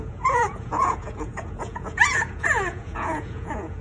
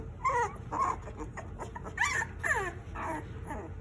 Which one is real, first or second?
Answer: second